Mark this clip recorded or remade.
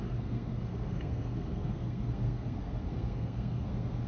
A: remade